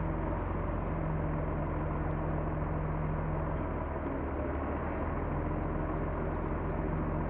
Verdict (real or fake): real